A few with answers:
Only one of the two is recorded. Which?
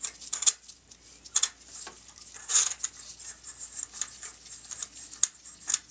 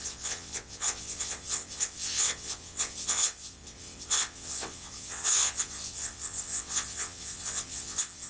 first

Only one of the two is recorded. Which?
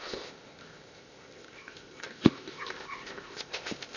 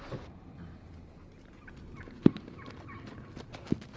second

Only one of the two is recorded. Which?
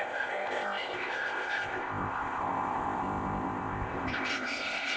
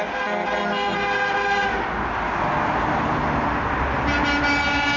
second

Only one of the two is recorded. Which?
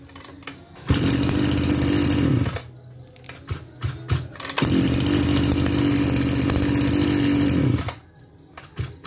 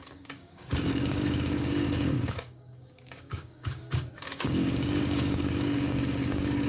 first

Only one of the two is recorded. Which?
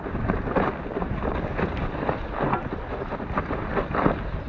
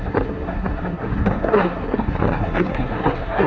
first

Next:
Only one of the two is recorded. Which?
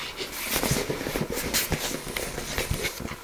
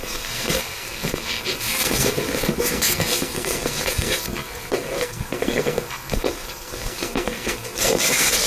first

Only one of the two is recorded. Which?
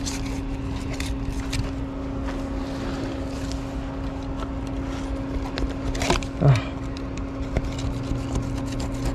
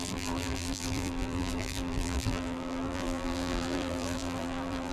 first